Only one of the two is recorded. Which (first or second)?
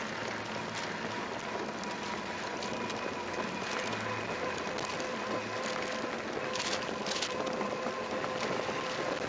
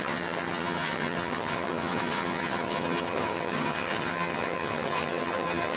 first